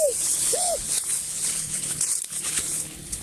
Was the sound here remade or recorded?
remade